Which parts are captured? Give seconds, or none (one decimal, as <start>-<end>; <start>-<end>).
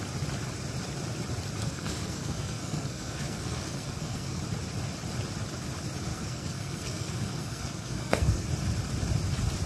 0.0-1.6; 4.4-6.1; 8.5-9.7